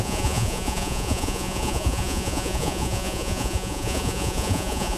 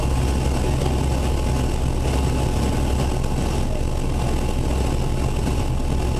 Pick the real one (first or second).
second